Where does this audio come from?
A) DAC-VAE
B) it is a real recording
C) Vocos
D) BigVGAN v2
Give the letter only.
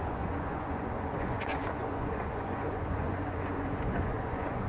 C